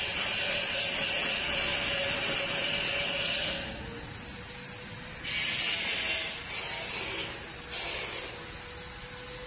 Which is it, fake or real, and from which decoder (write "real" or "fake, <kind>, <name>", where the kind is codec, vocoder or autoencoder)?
real